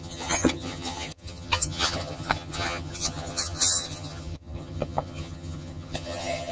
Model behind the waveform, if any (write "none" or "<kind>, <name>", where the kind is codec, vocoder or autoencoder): vocoder, HiFi-GAN